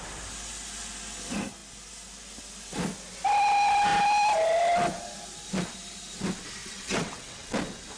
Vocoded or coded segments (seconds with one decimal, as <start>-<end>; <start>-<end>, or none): 6.6-7.5